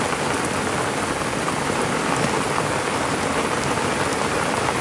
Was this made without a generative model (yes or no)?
yes